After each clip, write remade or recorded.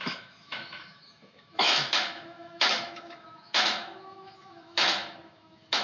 remade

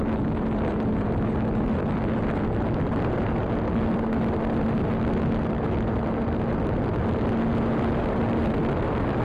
recorded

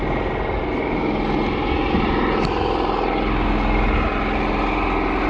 recorded